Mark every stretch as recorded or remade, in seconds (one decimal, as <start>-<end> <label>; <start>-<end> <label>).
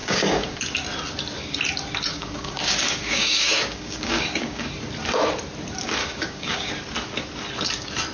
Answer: 0.0-0.6 remade; 0.6-2.1 recorded; 2.1-4.7 remade; 4.7-6.0 recorded; 6.0-6.7 remade; 6.7-8.1 recorded